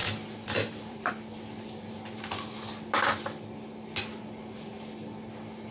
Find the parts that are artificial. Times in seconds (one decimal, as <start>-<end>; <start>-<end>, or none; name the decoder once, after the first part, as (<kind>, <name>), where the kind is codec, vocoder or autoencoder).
0.0-1.1 (vocoder, BigVGAN v2)